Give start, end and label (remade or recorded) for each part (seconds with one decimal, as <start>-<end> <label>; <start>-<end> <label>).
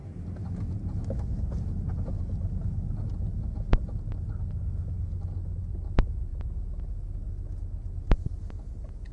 0.0-9.1 recorded